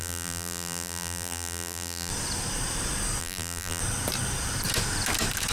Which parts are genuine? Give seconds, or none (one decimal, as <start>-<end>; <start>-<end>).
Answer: 2.1-3.2; 3.8-5.5